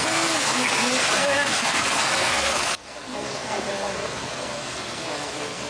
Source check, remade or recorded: remade